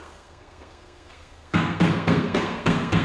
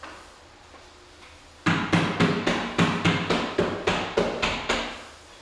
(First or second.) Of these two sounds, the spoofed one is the first